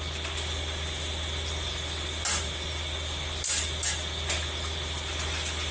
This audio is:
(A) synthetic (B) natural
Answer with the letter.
B